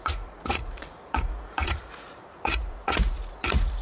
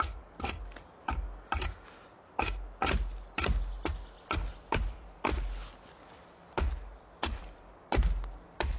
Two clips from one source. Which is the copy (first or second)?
first